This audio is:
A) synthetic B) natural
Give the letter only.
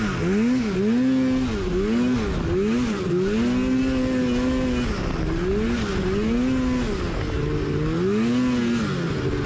B